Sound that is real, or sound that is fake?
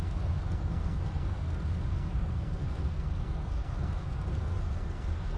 fake